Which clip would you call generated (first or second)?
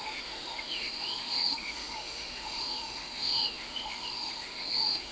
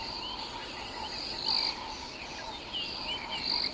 first